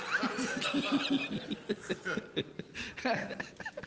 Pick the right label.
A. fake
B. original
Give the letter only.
B